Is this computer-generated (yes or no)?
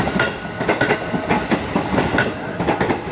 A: no